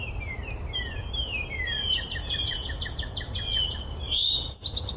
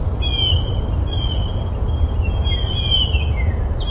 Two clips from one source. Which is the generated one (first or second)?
first